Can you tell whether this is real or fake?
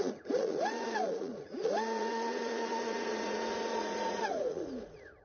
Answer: fake